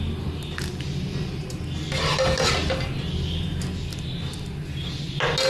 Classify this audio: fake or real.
real